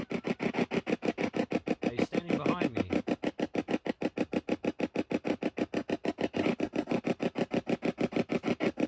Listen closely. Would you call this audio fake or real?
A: real